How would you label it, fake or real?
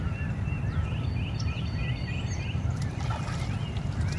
real